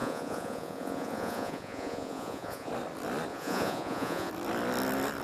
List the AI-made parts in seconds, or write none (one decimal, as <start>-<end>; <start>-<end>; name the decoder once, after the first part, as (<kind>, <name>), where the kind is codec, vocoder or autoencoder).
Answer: 0.0-2.7 (vocoder, Vocos); 3.3-4.3